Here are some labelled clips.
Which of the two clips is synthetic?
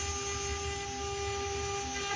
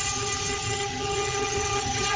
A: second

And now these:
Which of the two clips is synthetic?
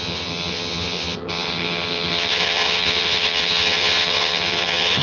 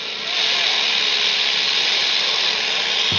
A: first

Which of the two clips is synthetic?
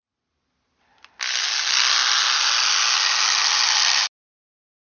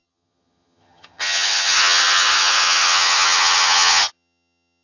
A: second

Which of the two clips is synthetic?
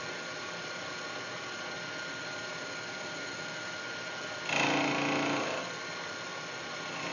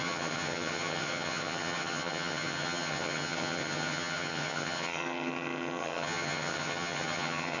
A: second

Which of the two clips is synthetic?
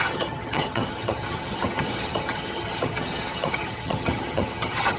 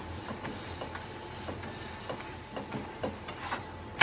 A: first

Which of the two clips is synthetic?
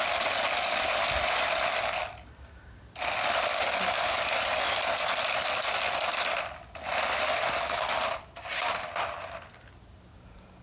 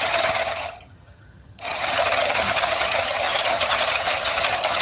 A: second